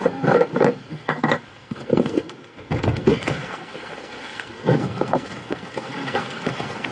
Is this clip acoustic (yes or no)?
no